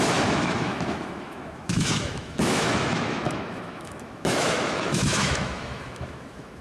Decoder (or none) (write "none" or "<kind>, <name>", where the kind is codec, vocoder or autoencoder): autoencoder, DAC-VAE